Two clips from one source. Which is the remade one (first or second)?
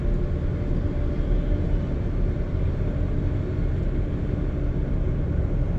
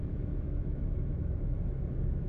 second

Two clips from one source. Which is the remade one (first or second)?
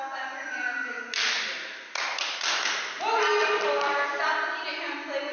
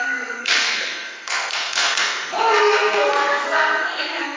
second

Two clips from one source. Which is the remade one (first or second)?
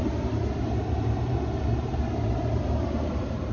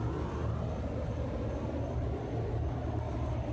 first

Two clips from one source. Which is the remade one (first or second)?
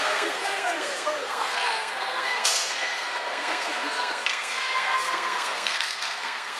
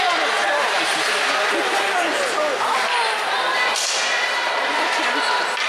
first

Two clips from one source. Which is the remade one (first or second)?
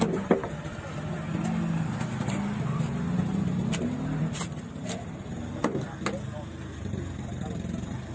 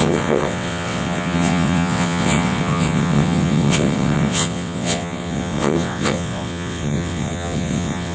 second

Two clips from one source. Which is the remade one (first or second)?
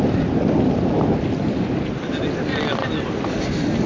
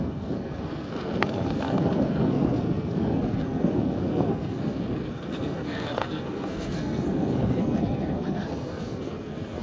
second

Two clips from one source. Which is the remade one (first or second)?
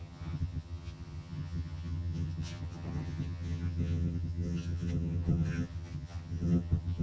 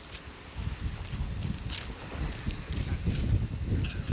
first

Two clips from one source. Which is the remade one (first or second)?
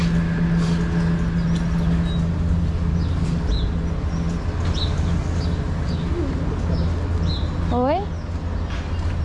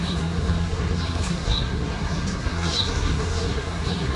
second